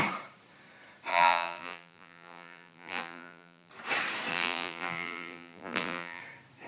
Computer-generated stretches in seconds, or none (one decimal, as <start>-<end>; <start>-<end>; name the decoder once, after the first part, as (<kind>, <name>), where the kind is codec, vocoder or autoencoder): 1.1-3.7 (vocoder, BigVGAN v2); 4.3-6.2